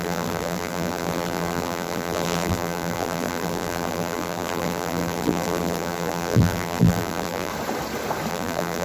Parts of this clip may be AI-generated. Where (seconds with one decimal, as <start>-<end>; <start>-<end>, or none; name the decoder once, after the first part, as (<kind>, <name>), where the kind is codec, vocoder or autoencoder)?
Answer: 0.0-7.5 (vocoder, BigVGAN v2); 8.3-8.8